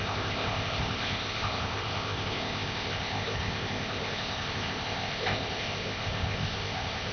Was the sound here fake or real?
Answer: fake